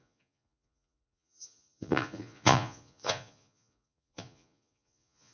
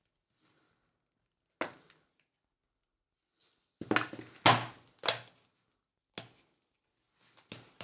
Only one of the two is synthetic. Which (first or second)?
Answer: first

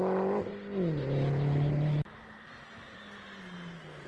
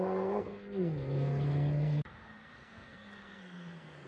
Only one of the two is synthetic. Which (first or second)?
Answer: second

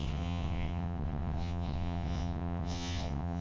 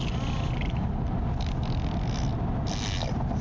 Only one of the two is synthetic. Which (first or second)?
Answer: first